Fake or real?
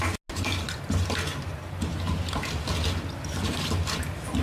real